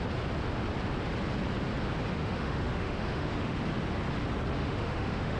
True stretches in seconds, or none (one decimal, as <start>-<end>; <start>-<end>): 0.0-2.2; 3.6-4.6

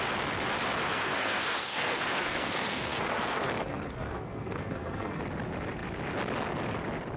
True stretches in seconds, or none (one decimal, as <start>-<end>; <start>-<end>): 0.0-0.9; 5.2-7.2